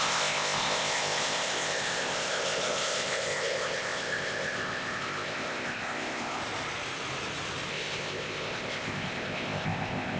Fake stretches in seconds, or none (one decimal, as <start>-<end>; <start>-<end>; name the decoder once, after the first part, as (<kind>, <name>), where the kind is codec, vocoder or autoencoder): 0.0-6.4 (codec, ZipCodec); 7.7-10.2